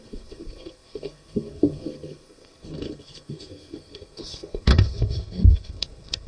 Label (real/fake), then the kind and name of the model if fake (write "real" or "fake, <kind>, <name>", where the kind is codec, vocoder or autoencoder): fake, codec, SNAC